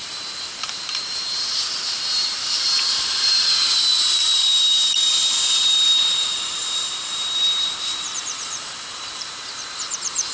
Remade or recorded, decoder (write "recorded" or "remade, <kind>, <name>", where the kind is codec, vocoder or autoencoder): remade, vocoder, BigVGAN v2